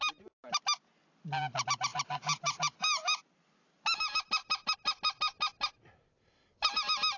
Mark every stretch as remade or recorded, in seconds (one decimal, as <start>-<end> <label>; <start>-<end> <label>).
0.0-7.2 recorded